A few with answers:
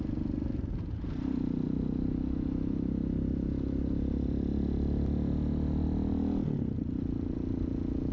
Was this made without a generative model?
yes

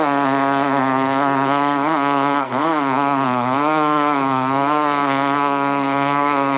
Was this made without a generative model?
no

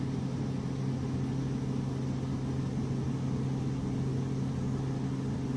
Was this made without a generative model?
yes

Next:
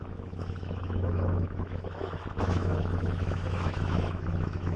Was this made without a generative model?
no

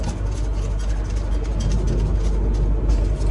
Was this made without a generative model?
yes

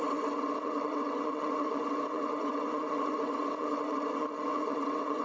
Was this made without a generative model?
no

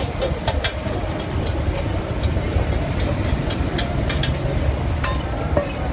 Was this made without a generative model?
no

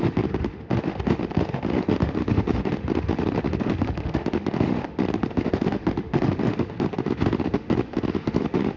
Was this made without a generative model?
no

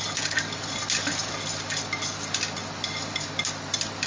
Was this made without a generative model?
yes